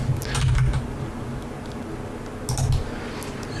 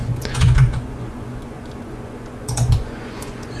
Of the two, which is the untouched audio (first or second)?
first